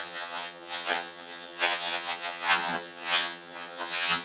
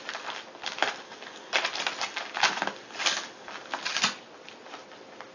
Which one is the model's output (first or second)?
first